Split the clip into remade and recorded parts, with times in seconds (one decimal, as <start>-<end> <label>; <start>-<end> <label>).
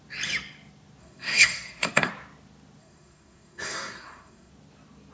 0.0-1.0 recorded; 1.0-2.1 remade; 2.1-2.8 recorded; 2.8-4.5 remade; 4.5-5.1 recorded